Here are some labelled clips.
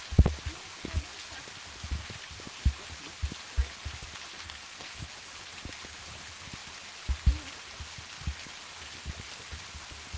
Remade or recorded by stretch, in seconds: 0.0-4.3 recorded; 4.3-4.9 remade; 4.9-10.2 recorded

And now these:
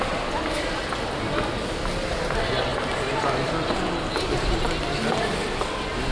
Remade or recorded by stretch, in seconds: 0.0-6.1 recorded

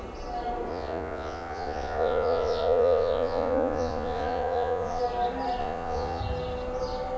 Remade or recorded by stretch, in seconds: 0.0-0.7 recorded; 0.7-5.0 remade; 5.0-5.6 recorded; 5.6-6.2 remade; 6.2-7.2 recorded

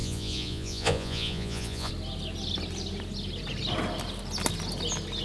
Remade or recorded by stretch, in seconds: 0.0-1.9 remade; 1.9-5.2 recorded